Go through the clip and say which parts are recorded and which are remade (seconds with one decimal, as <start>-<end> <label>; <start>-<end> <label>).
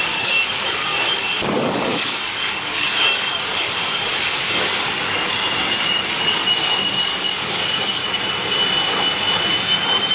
0.0-8.0 remade; 8.0-10.1 recorded